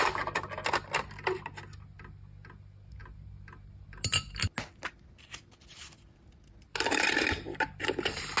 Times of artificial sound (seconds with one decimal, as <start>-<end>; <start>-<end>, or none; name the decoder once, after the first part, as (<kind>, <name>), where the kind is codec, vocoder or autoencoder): none

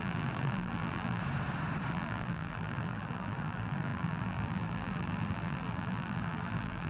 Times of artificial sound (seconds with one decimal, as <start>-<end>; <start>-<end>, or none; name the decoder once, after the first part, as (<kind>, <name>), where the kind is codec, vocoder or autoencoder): 0.0-1.2 (vocoder, BigVGAN v2); 1.9-6.9

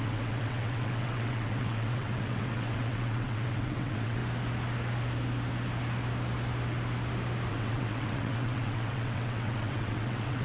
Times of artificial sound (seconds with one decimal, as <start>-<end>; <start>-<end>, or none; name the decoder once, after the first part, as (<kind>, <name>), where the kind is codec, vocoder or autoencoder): 0.0-4.2 (vocoder, WaveNeXt); 7.5-10.4